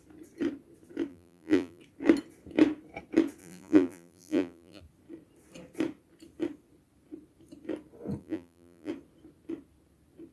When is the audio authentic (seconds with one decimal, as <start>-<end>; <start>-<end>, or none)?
0.0-1.1; 1.8-3.4; 4.8-8.2; 8.9-10.3